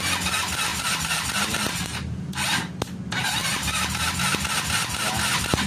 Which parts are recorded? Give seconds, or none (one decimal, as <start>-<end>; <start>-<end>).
0.0-0.7; 2.2-3.4; 4.1-5.7

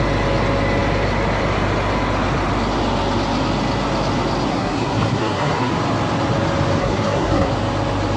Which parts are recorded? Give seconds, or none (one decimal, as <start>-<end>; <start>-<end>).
0.0-4.5; 5.7-6.8; 7.5-8.2

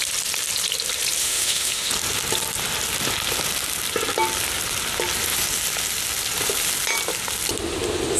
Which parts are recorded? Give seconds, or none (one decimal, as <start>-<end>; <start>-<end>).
0.0-1.2; 1.9-8.2

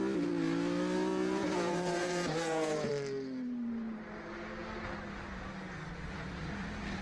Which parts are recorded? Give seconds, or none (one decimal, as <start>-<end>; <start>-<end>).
0.0-1.1; 2.9-7.0

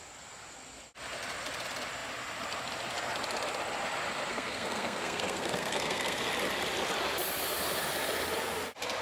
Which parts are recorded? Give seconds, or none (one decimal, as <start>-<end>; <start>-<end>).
0.0-4.3; 6.3-9.0

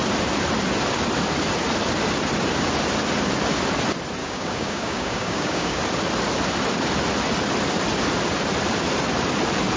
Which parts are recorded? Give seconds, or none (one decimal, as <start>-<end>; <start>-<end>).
0.0-4.2; 5.8-9.8

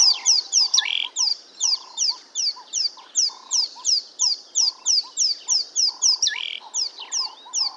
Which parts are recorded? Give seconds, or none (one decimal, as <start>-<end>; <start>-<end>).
0.8-1.3; 4.7-7.8

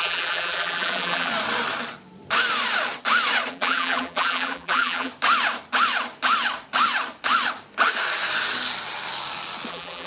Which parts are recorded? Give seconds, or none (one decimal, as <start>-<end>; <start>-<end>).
1.3-3.5; 5.1-9.7